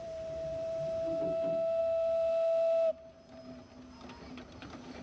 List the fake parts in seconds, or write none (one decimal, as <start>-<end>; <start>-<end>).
none